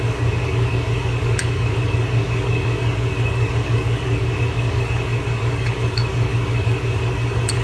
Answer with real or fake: fake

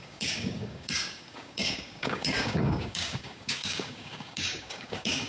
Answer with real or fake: fake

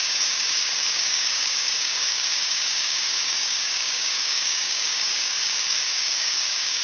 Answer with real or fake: fake